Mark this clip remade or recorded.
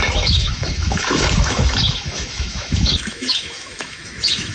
remade